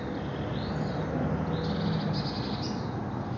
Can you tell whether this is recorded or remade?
recorded